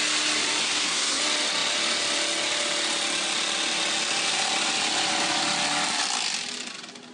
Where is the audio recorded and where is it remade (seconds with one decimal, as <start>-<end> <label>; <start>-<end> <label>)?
0.0-0.6 recorded; 0.6-1.2 remade; 1.2-7.1 recorded